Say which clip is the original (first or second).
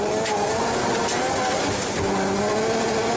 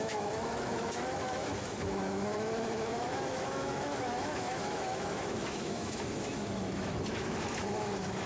first